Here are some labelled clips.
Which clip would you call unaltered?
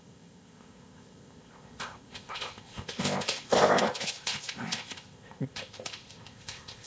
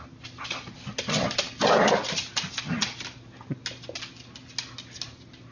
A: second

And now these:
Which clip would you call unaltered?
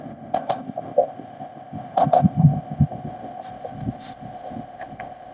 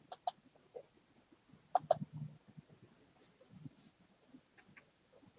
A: second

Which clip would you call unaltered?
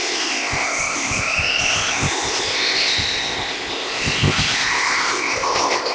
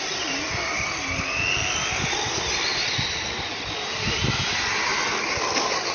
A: second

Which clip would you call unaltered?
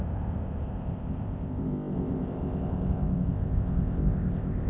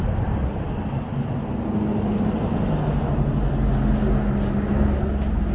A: second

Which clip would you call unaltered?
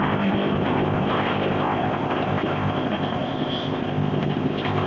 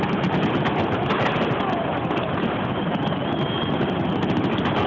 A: second